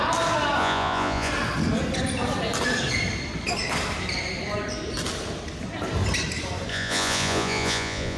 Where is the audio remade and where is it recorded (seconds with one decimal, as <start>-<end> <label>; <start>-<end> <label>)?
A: 0.0-0.6 recorded; 0.6-1.3 remade; 1.3-6.7 recorded; 6.7-8.2 remade